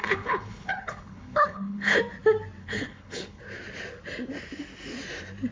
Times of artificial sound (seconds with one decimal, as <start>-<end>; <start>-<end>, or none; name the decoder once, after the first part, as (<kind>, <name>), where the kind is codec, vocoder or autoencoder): 0.0-2.0 (codec, HILCodec); 2.6-3.4